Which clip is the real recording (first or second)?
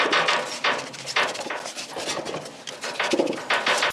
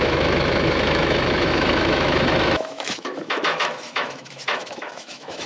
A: first